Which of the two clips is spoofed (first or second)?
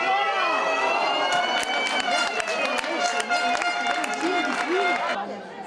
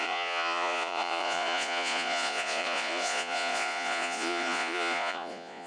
second